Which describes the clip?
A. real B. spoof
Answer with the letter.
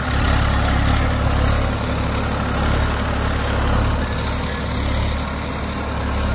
A